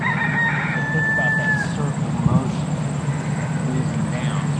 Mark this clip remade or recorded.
recorded